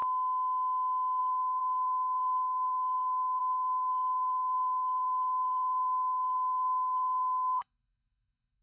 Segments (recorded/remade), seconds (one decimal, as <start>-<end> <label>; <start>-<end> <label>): 0.0-1.2 recorded; 1.2-8.6 remade